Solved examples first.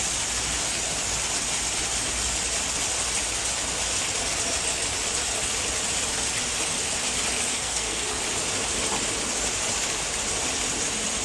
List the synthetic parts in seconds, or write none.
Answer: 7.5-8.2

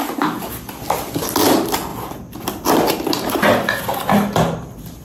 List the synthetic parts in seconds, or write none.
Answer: none

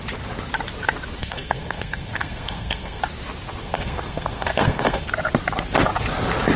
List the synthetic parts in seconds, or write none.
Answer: 1.2-3.0; 3.6-5.1

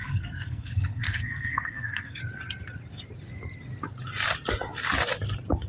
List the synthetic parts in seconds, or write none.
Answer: 0.0-2.2

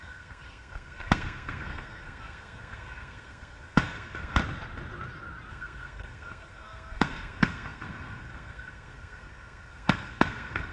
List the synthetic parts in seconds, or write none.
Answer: 0.0-4.4; 5.5-10.7